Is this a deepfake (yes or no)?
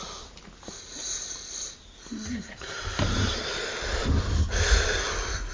no